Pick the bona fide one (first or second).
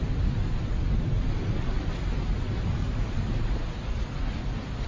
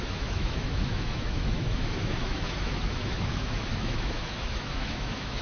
first